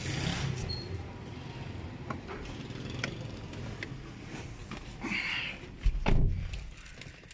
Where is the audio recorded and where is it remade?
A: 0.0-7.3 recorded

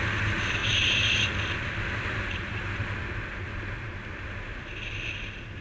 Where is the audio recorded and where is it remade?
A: 0.0-0.6 recorded; 0.6-2.5 remade; 2.5-5.6 recorded

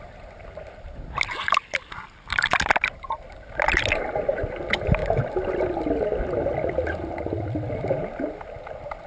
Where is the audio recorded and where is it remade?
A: 0.0-9.1 recorded

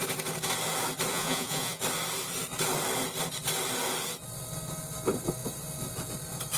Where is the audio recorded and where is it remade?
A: 0.0-1.1 recorded; 1.1-1.8 remade; 1.8-6.6 recorded

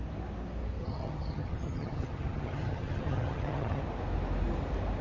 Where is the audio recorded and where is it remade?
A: 0.0-0.8 recorded; 0.8-3.8 remade; 3.8-5.0 recorded

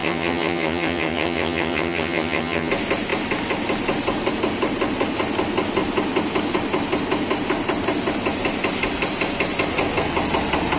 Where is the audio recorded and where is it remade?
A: 0.0-2.7 remade; 2.7-10.8 recorded

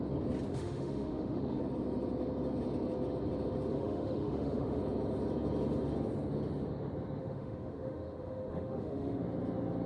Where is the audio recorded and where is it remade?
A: 0.0-0.5 recorded; 0.5-1.6 remade; 1.6-3.7 recorded; 3.7-4.8 remade; 4.8-7.2 recorded; 7.2-9.2 remade; 9.2-9.9 recorded

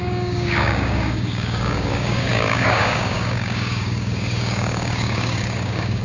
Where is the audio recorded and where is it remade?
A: 0.0-6.0 remade